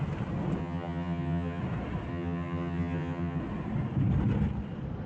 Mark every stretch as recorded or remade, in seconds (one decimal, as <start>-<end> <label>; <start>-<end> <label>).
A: 0.0-0.6 recorded; 0.6-1.6 remade; 1.6-2.1 recorded; 2.1-3.4 remade; 3.4-5.1 recorded